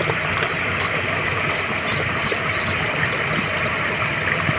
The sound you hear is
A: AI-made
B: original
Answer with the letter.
B